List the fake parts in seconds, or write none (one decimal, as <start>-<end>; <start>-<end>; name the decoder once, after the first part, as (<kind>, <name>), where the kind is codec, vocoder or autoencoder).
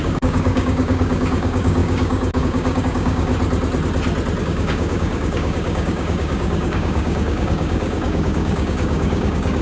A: 0.0-3.3 (codec, DAC); 4.4-9.6